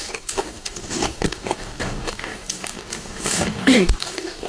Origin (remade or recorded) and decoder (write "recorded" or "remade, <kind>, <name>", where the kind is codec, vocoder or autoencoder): remade, codec, DAC